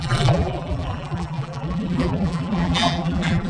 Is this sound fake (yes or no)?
yes